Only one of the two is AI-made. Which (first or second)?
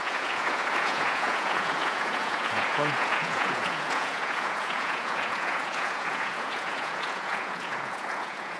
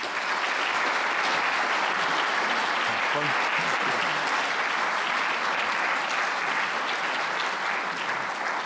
first